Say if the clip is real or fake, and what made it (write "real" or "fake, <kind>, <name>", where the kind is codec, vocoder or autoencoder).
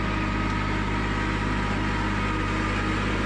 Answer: real